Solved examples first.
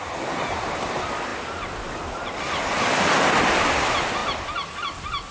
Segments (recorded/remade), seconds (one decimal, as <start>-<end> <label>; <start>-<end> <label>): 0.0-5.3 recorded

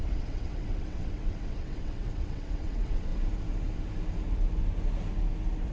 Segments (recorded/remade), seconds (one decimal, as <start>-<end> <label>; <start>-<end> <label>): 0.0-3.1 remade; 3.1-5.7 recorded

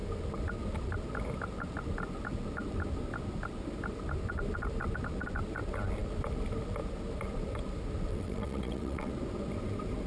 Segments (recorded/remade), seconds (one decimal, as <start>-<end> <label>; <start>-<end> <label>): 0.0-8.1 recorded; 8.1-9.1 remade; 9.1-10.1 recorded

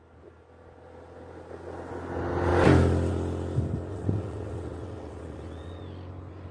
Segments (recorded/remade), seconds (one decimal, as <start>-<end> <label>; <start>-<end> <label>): 0.0-3.9 recorded; 3.9-5.8 remade; 5.8-6.5 recorded

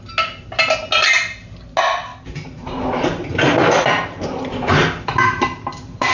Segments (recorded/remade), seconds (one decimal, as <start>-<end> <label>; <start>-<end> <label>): 0.0-6.1 recorded

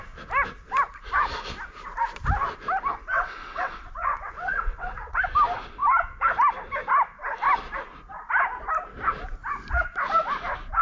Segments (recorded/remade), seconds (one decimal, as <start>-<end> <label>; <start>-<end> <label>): 0.0-3.1 recorded; 3.1-5.2 remade; 5.2-10.8 recorded

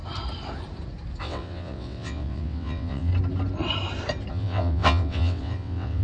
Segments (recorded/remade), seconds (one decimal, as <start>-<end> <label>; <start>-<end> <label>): 0.0-1.2 recorded; 1.2-3.1 remade; 3.1-4.3 recorded; 4.3-6.0 remade

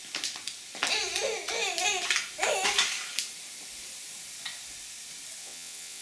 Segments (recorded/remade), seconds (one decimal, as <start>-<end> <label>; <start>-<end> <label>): 0.0-5.4 recorded; 5.4-6.0 remade